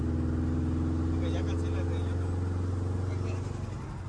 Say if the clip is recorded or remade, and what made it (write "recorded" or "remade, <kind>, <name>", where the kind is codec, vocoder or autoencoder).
recorded